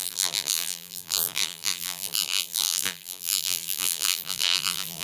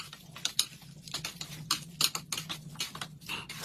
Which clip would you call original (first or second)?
second